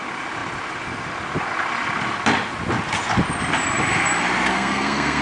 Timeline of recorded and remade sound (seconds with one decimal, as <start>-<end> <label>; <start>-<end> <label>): 0.0-4.5 recorded; 4.5-5.2 remade